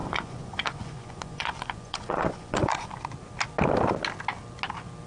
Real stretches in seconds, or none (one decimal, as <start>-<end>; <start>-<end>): 3.0-5.1